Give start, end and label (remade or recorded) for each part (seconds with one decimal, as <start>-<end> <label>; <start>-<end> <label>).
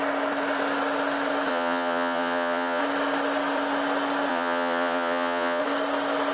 0.0-1.5 recorded; 1.5-2.8 remade; 2.8-4.3 recorded; 4.3-5.6 remade; 5.6-6.3 recorded